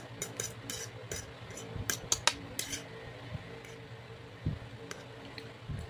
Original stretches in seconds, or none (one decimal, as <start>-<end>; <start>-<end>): 0.0-5.9